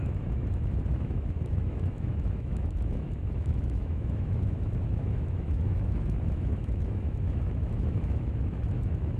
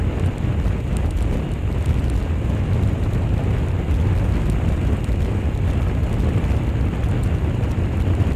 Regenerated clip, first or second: first